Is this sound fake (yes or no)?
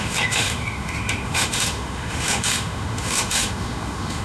yes